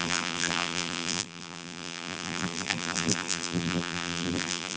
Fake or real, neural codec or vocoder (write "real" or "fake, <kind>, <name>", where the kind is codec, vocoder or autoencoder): fake, vocoder, BigVGAN v2